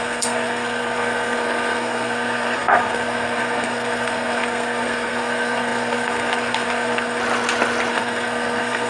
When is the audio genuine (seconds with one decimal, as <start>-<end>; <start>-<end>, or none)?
7.2-7.9